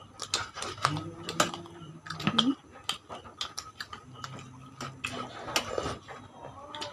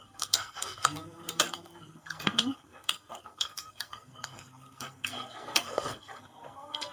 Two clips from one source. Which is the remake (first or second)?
second